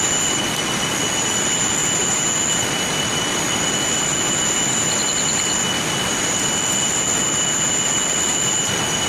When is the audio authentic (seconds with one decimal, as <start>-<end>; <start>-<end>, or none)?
0.0-9.1